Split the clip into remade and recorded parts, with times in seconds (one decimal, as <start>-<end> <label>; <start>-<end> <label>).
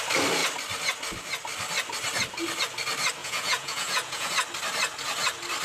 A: 0.0-3.2 recorded; 3.2-4.3 remade; 4.3-5.6 recorded